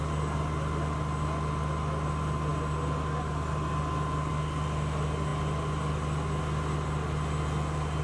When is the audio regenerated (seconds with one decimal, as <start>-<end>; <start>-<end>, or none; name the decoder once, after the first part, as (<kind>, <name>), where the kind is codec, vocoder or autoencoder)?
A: none